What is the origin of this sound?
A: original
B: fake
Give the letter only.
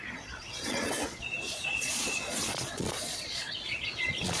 B